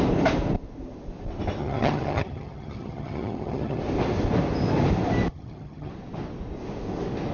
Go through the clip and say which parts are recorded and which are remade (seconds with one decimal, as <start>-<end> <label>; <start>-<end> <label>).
0.0-1.6 recorded; 1.6-3.8 remade; 3.8-5.3 recorded; 5.3-5.9 remade; 5.9-7.3 recorded